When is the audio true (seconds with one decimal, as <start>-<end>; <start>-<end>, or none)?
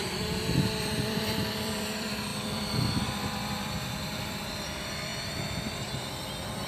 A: 5.1-5.8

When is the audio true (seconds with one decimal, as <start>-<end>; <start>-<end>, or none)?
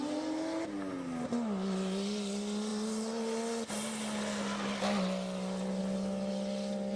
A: 0.0-7.0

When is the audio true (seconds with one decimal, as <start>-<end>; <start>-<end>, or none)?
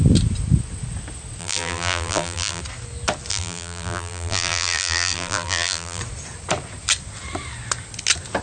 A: 0.0-1.4; 2.6-3.3; 6.0-8.4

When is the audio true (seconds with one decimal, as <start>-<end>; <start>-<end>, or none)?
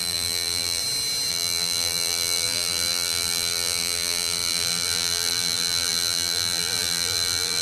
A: 0.8-1.3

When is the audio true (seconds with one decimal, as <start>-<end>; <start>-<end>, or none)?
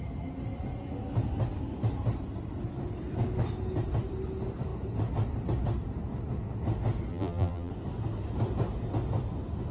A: 0.0-7.1; 7.7-9.7